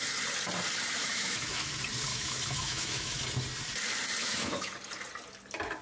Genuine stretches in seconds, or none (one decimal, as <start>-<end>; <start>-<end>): 0.0-1.0; 1.7-2.1; 3.2-4.2; 4.7-5.8